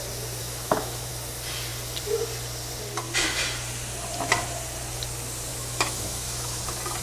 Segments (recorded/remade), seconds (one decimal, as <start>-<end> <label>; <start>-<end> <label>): 0.0-0.4 recorded; 0.4-1.1 remade; 1.1-5.5 recorded; 5.5-6.6 remade; 6.6-7.0 recorded